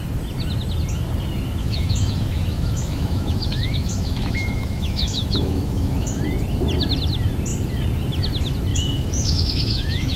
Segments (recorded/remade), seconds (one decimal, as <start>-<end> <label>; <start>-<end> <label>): 0.0-1.6 recorded; 1.6-6.2 remade; 6.2-8.7 recorded; 8.7-10.2 remade